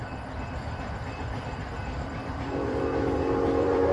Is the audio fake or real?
fake